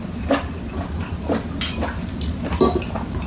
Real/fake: fake